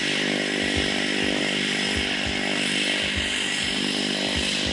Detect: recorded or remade remade